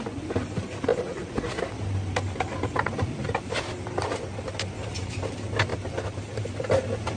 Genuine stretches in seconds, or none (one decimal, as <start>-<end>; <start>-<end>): 0.0-7.2